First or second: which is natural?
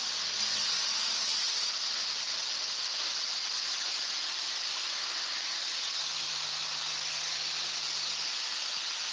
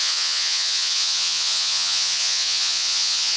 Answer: first